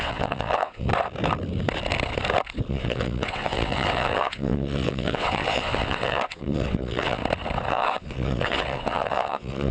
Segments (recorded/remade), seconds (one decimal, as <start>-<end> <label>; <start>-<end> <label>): 0.0-0.9 remade; 0.9-2.7 recorded; 2.7-7.2 remade; 7.2-7.7 recorded; 7.7-9.7 remade